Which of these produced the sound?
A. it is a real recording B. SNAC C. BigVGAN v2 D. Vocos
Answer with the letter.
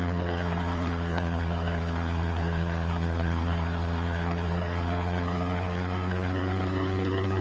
B